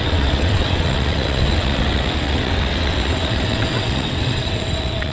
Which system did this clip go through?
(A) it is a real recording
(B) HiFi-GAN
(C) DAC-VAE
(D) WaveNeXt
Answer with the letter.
D